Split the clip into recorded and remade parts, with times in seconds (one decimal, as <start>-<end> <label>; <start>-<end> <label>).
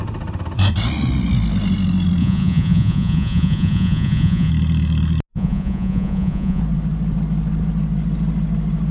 0.0-2.2 recorded; 2.2-4.5 remade; 4.5-5.3 recorded; 5.3-6.6 remade; 6.6-8.9 recorded